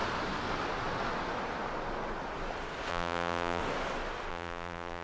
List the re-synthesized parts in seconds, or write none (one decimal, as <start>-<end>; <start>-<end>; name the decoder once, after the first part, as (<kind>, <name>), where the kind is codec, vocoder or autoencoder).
2.9-3.6 (vocoder, BigVGAN v2); 4.3-5.0